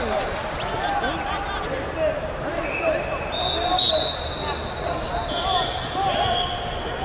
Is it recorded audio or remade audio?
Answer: recorded